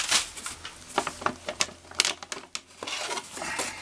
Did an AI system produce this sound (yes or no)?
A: no